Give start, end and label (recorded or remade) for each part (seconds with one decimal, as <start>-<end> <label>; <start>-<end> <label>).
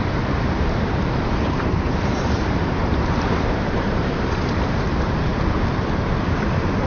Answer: 0.0-5.3 remade; 5.3-6.2 recorded; 6.2-6.9 remade